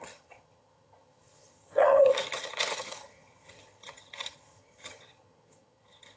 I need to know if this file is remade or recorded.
remade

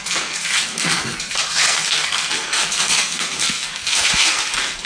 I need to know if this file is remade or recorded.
remade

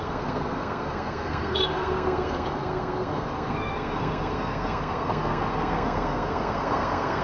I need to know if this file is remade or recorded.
remade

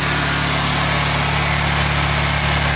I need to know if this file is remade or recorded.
recorded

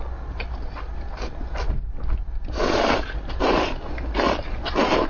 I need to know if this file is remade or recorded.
recorded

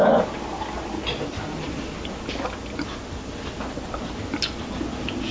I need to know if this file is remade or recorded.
recorded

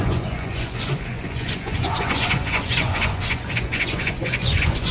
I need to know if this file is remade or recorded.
remade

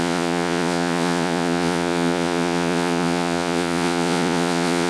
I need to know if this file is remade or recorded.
remade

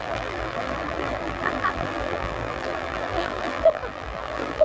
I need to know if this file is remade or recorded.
remade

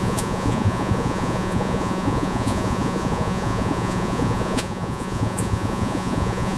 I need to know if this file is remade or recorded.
remade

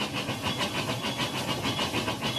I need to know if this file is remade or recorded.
recorded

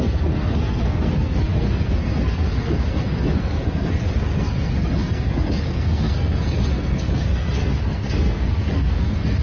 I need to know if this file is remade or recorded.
remade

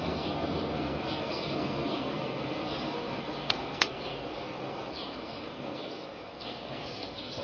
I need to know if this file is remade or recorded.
remade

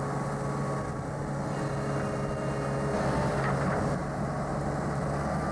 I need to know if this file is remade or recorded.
recorded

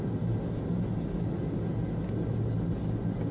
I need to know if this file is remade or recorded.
recorded